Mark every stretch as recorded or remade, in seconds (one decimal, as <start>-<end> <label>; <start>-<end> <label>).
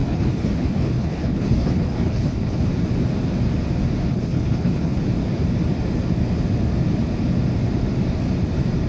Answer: 0.0-2.6 remade; 2.6-4.1 recorded; 4.1-5.0 remade; 5.0-8.9 recorded